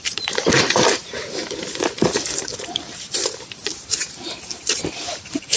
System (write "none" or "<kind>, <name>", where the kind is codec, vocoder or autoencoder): vocoder, BigVGAN v2